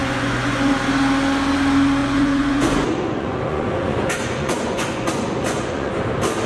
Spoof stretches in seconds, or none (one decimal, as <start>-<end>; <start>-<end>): 0.0-0.7; 2.0-5.9

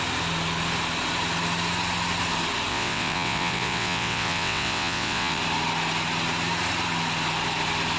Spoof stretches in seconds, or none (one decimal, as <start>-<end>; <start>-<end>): 2.7-5.4